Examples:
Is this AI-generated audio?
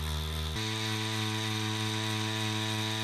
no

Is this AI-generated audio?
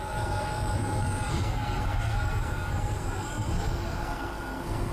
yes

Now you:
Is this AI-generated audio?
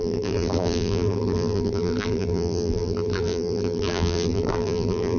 yes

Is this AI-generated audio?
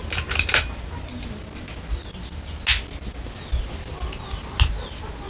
no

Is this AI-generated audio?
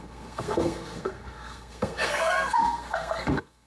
yes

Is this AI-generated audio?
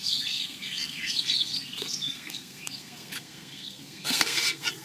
yes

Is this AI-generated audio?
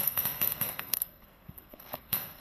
yes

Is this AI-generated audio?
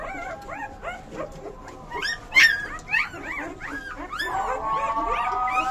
no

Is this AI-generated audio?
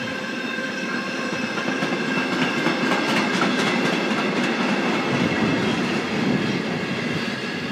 no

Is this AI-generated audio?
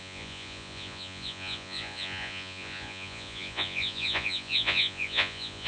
yes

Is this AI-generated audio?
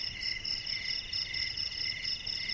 no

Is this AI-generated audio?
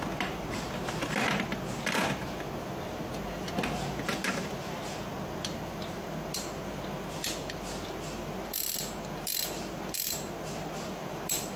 yes